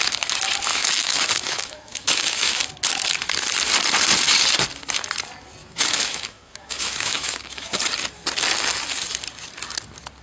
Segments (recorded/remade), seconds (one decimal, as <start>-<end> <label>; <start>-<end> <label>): 0.0-0.7 recorded; 0.7-2.7 remade; 2.7-5.6 recorded; 5.6-7.7 remade; 7.7-10.2 recorded